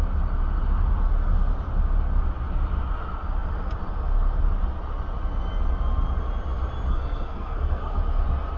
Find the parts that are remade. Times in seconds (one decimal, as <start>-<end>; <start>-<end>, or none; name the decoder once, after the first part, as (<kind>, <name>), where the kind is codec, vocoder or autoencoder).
6.9-8.0 (codec, SNAC)